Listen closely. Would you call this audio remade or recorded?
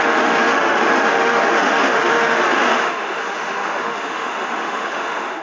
remade